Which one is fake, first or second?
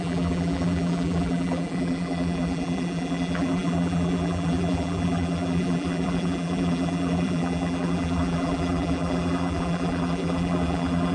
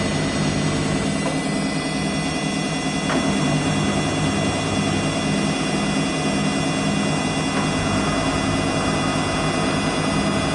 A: first